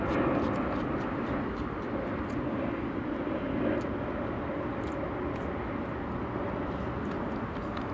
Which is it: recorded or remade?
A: recorded